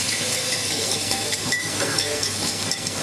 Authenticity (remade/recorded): remade